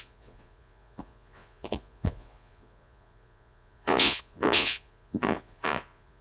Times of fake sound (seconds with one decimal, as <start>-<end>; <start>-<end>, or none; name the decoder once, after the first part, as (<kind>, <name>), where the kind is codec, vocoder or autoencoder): 0.0-6.2 (vocoder, Vocos)